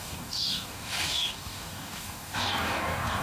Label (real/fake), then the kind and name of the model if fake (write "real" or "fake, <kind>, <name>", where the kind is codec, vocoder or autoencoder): fake, codec, DAC